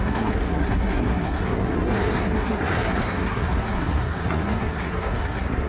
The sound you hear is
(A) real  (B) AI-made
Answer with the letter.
B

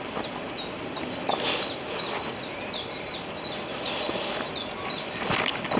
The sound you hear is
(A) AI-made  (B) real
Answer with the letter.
B